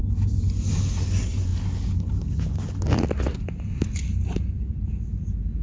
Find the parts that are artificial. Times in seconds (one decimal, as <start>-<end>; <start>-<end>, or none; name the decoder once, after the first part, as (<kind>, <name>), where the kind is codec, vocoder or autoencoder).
none